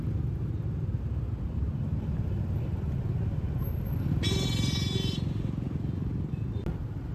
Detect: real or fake real